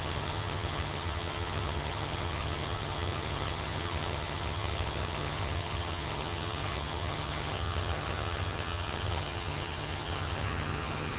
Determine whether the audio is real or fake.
fake